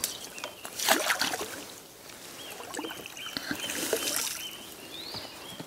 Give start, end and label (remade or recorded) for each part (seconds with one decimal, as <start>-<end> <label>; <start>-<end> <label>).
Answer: 0.0-5.7 recorded